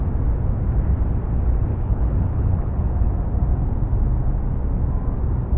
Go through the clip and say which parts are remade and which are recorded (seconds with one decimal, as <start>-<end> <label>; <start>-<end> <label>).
0.0-1.7 recorded; 1.7-2.8 remade; 2.8-5.6 recorded